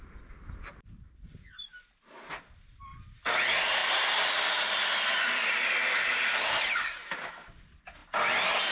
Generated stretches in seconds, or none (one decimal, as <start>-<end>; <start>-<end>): 3.8-6.8